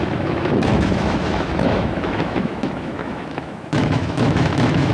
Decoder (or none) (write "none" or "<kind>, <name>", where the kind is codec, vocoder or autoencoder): autoencoder, DAC-VAE